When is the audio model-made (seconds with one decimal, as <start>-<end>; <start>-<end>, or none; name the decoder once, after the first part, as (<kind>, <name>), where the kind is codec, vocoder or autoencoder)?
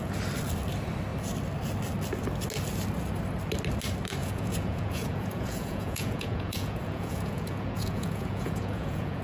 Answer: 4.2-9.2 (vocoder, Vocos)